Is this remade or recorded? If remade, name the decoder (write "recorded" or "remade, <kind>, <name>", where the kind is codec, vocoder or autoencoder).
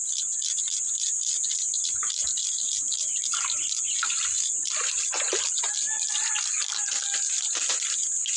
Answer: recorded